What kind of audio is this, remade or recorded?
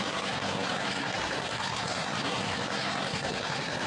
remade